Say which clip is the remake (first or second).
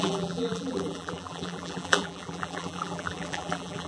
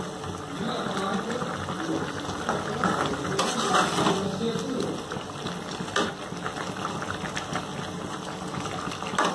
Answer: first